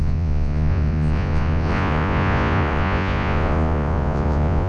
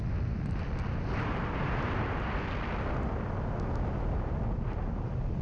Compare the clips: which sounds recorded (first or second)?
second